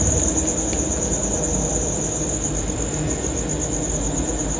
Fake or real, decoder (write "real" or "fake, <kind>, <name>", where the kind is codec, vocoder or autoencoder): real